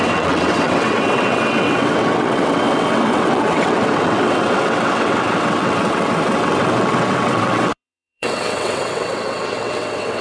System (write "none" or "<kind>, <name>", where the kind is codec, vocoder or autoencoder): vocoder, WaveNeXt